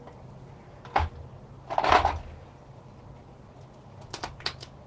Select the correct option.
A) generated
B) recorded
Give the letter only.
B